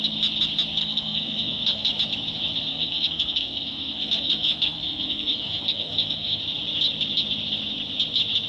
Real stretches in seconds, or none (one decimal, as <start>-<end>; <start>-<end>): 0.0-0.8; 1.9-2.7; 6.4-8.5